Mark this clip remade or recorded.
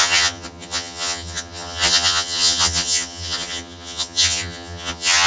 remade